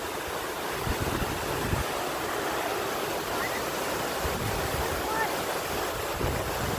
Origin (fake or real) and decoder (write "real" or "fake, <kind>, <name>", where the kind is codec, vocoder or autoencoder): real